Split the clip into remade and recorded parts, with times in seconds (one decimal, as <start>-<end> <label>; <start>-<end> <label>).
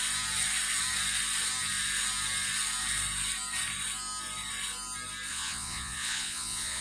0.0-5.3 recorded; 5.3-6.8 remade